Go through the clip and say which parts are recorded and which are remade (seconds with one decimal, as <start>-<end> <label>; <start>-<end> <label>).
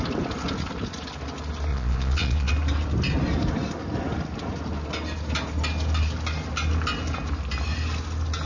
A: 0.0-1.7 recorded; 1.7-2.5 remade; 2.5-8.5 recorded